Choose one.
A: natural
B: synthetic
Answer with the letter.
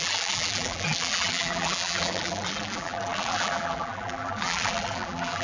B